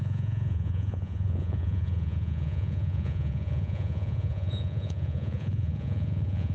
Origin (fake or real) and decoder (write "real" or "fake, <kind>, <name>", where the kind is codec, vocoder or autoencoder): fake, vocoder, Vocos